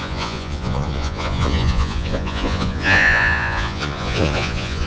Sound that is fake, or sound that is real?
fake